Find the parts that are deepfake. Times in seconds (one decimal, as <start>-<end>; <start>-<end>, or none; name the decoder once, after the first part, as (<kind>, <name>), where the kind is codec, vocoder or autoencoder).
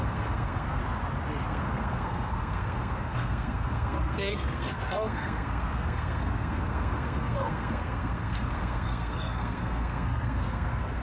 0.0-0.8 (codec, SNAC); 1.5-11.0